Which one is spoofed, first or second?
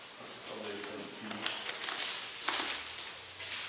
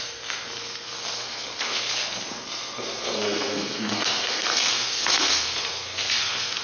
second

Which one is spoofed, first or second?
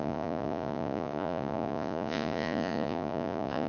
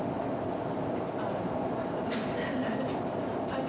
first